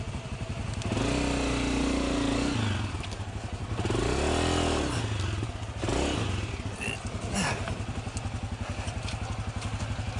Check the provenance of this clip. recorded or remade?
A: recorded